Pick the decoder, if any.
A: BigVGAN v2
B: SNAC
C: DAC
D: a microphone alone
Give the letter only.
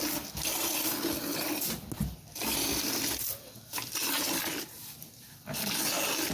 D